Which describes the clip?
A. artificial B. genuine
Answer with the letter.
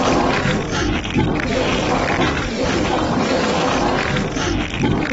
A